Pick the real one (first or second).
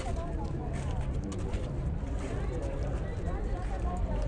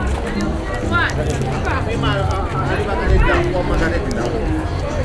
second